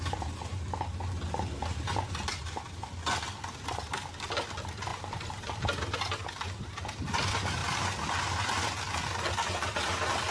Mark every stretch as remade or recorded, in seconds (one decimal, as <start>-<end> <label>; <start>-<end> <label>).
0.0-1.6 recorded; 1.6-2.6 remade; 2.6-4.9 recorded; 4.9-6.8 remade; 6.8-10.3 recorded